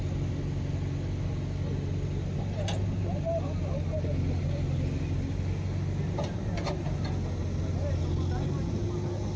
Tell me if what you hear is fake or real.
real